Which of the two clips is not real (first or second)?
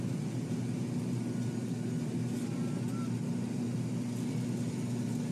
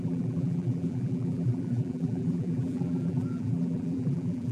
second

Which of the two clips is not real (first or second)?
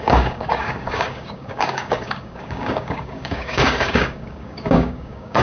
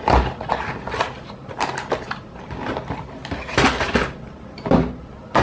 first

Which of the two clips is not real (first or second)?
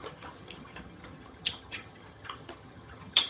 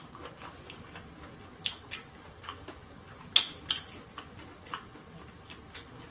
first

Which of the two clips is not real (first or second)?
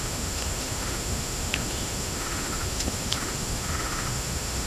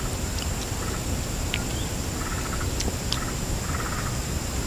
first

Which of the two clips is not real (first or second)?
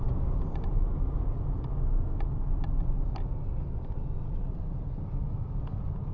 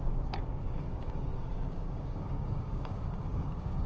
second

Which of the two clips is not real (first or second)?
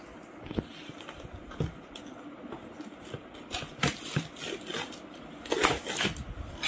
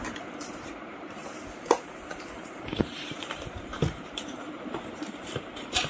second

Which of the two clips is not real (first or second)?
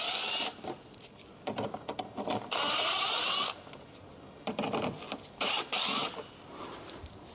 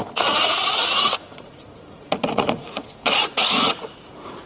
second